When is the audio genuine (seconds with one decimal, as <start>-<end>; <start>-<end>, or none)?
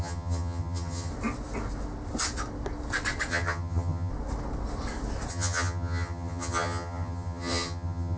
1.1-3.3; 4.1-5.3